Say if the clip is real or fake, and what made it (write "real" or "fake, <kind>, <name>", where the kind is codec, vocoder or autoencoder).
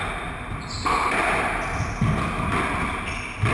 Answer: real